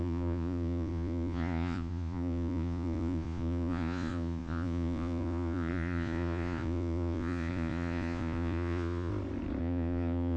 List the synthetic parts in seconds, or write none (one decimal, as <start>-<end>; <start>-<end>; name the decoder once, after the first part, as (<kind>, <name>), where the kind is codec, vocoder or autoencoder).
0.0-9.1 (vocoder, Vocos); 9.6-10.4